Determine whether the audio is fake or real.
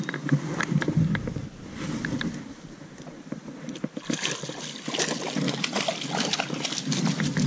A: real